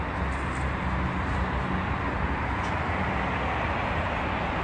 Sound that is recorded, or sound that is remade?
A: recorded